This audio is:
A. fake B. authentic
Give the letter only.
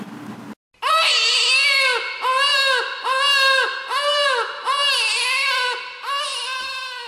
B